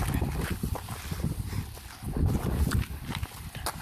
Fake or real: real